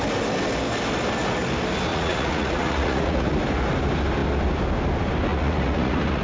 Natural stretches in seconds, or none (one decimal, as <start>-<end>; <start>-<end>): 0.0-1.9; 3.3-5.3